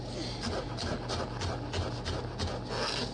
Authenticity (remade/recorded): recorded